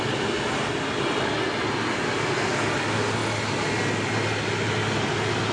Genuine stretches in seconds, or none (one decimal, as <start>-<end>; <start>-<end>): 0.0-5.5